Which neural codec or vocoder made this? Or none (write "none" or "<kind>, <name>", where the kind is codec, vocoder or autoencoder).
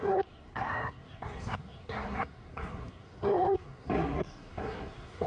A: codec, SNAC